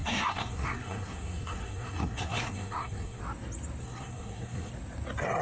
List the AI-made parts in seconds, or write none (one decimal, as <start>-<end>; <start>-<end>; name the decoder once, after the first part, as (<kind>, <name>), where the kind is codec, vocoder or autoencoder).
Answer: 0.0-3.2 (codec, SNAC); 3.8-4.7